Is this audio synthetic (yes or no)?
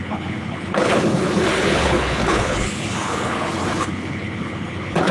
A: yes